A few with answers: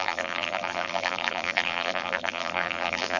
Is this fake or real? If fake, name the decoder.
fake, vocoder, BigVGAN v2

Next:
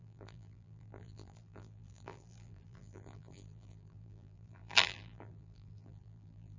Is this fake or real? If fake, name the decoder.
fake, vocoder, BigVGAN v2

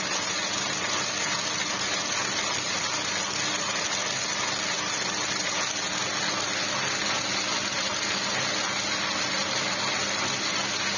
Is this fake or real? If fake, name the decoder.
real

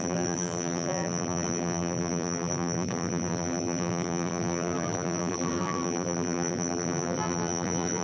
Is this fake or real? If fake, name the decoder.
fake, vocoder, BigVGAN v2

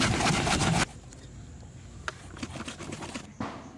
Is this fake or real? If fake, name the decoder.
real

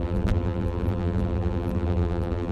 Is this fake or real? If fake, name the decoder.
fake, vocoder, BigVGAN v2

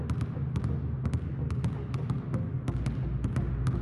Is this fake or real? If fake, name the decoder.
real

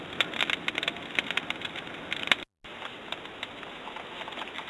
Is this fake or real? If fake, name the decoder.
real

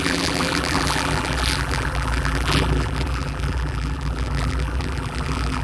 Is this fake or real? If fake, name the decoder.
fake, vocoder, BigVGAN v2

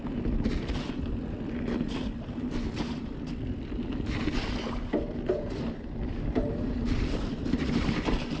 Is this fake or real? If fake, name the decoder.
real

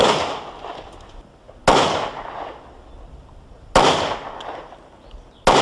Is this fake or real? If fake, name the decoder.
real